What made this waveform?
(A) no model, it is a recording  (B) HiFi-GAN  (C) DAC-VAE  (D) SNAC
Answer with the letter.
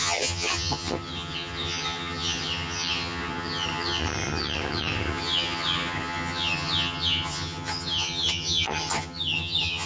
B